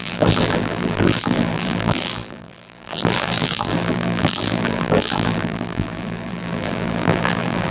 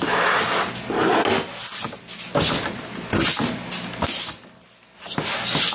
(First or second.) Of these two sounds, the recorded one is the second